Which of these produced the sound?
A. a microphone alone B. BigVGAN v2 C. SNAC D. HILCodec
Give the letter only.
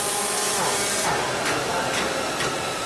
A